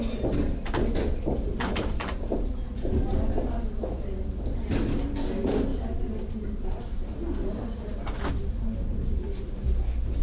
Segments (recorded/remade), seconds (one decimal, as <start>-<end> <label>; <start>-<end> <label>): 0.0-1.7 recorded; 1.7-2.5 remade; 2.5-5.7 recorded; 5.7-6.8 remade; 6.8-7.4 recorded; 7.4-8.3 remade; 8.3-10.2 recorded